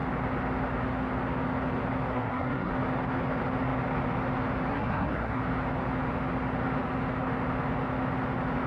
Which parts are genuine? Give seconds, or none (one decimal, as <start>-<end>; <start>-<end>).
0.0-2.1; 2.7-4.7; 5.4-8.7